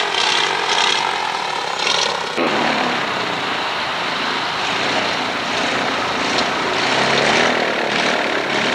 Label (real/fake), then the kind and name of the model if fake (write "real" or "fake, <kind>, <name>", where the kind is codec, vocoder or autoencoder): fake, vocoder, BigVGAN v2